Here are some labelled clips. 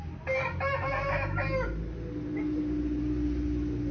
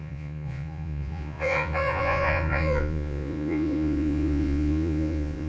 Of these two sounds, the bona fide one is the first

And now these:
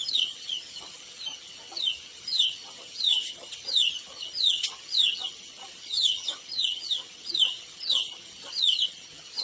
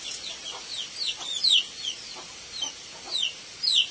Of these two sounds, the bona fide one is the second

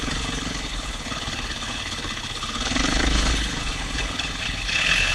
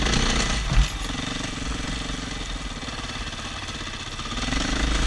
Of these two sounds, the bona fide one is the second